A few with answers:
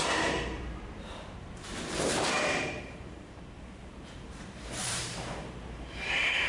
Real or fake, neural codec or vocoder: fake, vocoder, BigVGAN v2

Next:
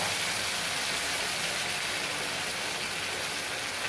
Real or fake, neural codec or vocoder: real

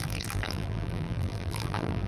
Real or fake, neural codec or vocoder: fake, vocoder, BigVGAN v2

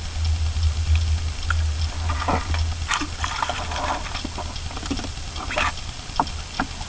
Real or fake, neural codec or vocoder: real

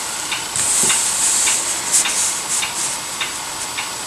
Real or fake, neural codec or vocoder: real